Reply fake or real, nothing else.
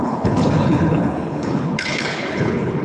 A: fake